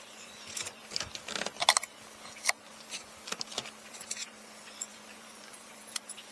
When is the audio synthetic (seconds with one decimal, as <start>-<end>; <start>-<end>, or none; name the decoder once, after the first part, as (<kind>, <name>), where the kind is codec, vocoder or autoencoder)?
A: 0.0-0.8 (vocoder, Vocos); 2.5-3.3; 3.9-6.3

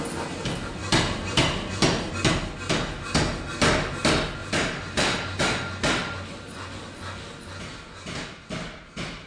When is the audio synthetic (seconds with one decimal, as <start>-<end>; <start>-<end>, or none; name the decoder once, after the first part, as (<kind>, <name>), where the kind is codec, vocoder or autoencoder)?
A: 0.8-2.1 (vocoder, BigVGAN v2); 4.4-5.4

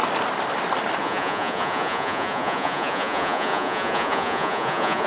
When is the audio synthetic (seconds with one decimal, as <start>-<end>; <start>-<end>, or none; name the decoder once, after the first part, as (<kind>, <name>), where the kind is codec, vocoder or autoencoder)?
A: 1.0-5.1 (vocoder, Vocos)